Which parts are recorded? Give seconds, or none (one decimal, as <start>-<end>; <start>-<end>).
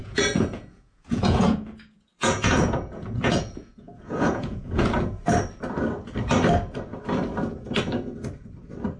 5.2-9.0